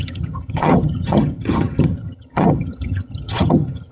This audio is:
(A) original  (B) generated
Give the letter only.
B